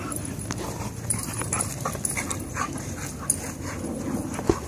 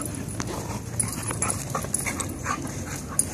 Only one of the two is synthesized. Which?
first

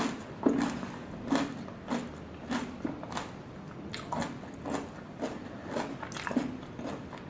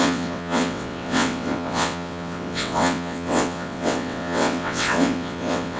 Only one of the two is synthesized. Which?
second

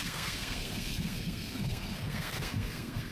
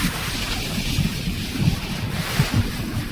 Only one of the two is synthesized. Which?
first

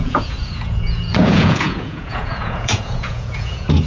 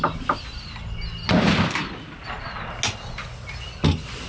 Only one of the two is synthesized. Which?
first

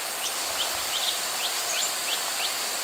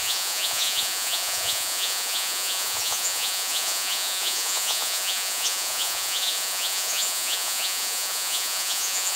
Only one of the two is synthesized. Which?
second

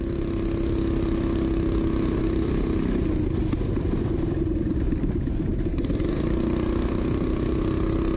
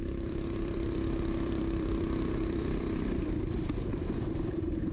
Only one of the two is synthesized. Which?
second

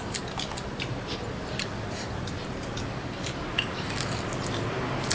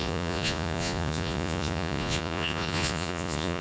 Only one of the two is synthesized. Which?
second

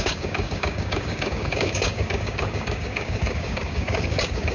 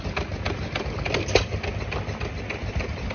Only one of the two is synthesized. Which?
first